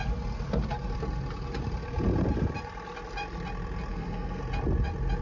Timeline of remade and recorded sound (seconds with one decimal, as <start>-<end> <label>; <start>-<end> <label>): 0.0-3.9 recorded; 3.9-4.4 remade; 4.4-5.2 recorded